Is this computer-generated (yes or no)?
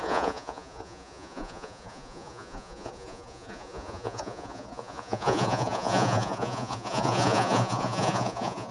yes